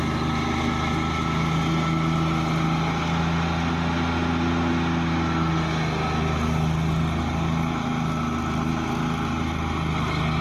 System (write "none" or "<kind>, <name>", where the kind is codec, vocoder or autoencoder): none